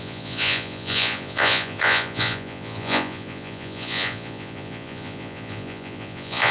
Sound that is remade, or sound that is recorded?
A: remade